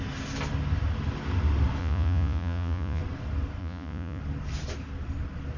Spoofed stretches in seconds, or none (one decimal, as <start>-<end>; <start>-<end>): 1.8-3.0; 3.6-4.2